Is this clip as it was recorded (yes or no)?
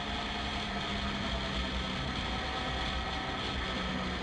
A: yes